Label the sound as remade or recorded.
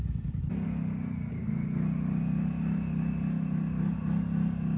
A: recorded